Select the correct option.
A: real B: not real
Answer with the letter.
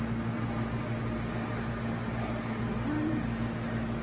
A